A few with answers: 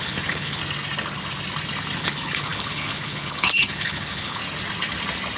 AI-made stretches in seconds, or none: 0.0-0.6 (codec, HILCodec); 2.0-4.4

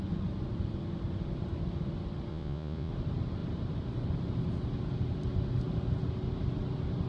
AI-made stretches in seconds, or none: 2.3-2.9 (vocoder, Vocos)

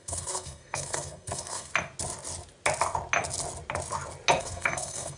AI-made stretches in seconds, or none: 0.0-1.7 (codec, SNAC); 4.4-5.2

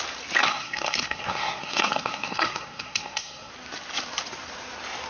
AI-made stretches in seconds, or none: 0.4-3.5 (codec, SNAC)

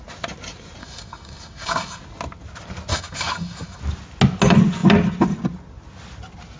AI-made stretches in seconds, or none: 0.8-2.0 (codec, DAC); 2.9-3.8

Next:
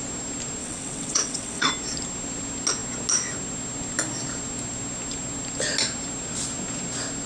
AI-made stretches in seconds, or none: 0.6-1.7 (vocoder, WaveNeXt)